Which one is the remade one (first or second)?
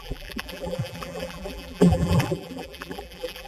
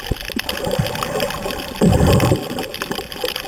first